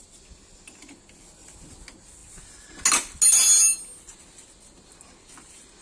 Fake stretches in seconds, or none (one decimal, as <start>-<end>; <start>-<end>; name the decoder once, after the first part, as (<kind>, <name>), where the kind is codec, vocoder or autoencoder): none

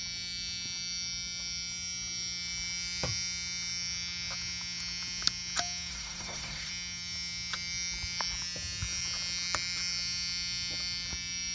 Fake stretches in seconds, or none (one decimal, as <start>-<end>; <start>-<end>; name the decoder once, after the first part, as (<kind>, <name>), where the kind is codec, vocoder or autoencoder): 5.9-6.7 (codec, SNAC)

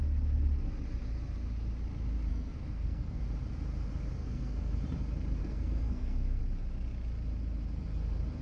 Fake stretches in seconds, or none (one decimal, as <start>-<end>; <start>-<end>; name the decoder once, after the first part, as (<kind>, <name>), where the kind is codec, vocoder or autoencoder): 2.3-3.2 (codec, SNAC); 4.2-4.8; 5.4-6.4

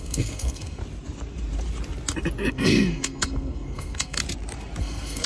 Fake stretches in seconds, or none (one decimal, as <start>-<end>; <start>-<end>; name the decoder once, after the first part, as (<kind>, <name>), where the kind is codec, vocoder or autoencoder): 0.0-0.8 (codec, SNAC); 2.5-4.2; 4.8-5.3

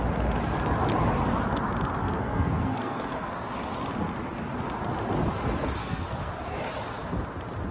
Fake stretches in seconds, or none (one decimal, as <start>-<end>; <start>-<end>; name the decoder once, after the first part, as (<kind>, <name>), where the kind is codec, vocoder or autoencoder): 2.0-3.3 (codec, SNAC); 5.8-6.3

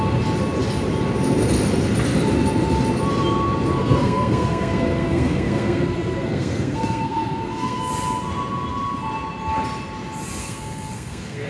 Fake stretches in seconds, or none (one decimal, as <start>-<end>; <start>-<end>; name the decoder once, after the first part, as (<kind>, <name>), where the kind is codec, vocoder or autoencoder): 3.8-7.9 (codec, SNAC); 10.4-11.5

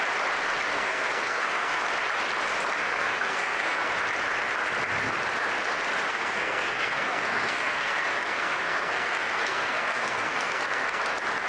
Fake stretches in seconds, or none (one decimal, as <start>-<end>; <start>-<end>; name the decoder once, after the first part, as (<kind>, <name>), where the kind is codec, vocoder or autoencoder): 0.7-1.8 (codec, SNAC); 2.8-3.9; 6.1-11.0

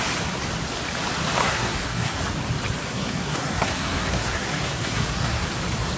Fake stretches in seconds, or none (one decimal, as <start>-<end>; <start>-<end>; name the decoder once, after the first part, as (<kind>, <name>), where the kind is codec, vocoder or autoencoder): 1.4-2.2 (codec, SNAC); 2.8-5.5